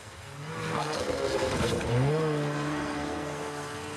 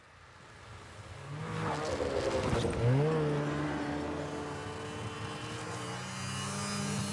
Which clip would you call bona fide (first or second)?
second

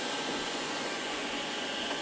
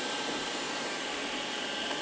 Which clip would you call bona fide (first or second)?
second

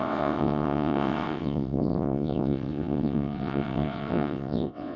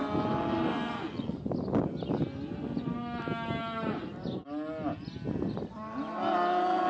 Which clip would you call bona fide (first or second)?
second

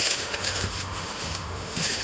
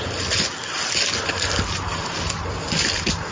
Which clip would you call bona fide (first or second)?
second